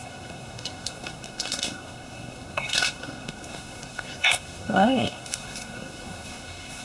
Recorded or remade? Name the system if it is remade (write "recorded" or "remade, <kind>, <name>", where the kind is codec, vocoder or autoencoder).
remade, codec, SNAC